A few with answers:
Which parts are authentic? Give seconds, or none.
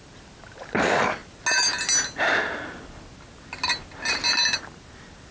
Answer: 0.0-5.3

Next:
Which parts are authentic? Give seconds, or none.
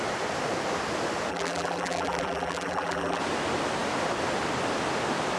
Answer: 0.0-1.3; 3.2-5.4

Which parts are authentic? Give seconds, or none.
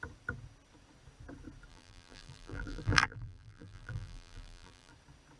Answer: 0.0-1.7; 4.9-5.4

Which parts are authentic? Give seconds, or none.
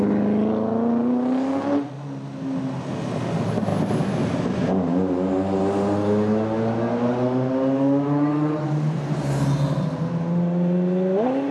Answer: 0.0-11.5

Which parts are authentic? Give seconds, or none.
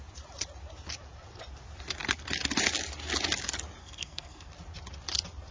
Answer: 0.0-3.8; 4.5-5.5